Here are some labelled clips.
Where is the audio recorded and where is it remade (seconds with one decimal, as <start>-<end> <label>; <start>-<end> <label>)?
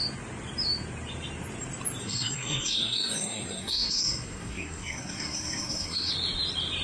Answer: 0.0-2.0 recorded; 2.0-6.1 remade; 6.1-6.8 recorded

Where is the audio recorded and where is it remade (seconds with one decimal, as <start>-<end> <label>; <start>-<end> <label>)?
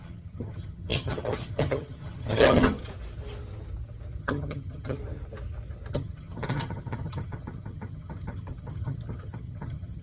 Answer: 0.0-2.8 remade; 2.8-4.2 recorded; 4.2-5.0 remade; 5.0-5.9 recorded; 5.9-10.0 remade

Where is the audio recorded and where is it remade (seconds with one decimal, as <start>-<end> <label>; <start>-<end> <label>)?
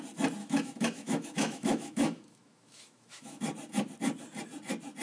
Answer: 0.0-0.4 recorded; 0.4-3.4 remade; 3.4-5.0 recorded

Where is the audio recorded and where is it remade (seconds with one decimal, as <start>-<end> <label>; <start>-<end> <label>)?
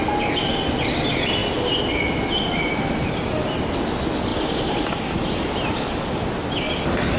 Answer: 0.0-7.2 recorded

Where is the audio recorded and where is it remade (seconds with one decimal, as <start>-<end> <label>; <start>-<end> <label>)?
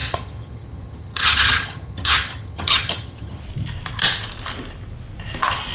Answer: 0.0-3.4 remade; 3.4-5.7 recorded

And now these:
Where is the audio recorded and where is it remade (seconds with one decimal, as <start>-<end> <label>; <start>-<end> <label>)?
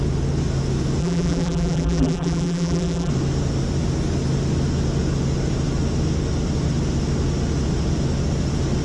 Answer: 0.0-1.0 recorded; 1.0-3.1 remade; 3.1-8.8 recorded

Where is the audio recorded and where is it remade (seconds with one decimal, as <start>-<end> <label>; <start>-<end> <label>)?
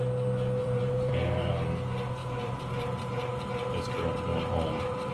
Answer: 0.0-0.6 recorded; 0.6-1.5 remade; 1.5-2.2 recorded; 2.2-3.5 remade; 3.5-4.3 recorded; 4.3-5.1 remade